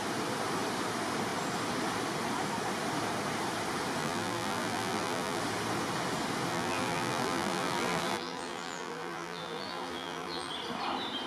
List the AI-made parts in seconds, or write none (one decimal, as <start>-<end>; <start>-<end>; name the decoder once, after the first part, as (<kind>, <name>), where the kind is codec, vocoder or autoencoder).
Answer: 4.0-5.4 (vocoder, BigVGAN v2); 6.5-10.5